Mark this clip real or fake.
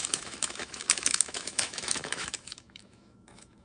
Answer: fake